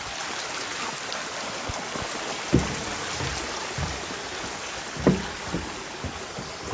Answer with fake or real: real